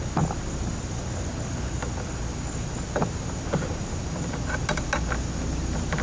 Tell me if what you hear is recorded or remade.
recorded